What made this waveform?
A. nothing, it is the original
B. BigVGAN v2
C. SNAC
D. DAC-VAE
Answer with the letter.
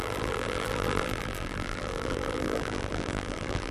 B